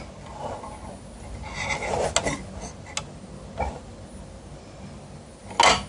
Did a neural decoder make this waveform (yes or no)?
no